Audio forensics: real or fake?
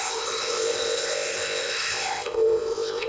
fake